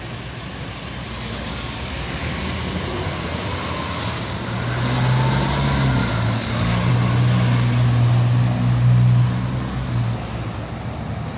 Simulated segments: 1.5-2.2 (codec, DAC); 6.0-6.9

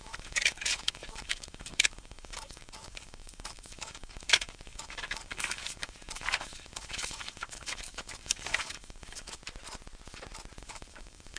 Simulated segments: 0.0-9.4 (codec, DAC); 10.6-11.4